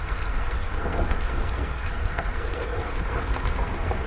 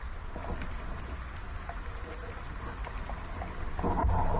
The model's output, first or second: first